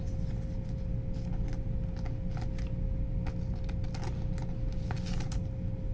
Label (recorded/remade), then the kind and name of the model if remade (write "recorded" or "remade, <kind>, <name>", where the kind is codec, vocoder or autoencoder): recorded